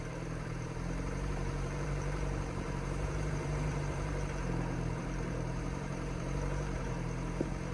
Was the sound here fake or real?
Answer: fake